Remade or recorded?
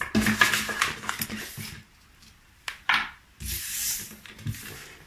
recorded